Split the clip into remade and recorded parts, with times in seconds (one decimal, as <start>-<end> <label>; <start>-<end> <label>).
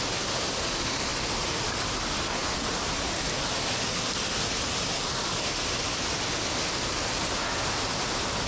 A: 0.0-8.5 recorded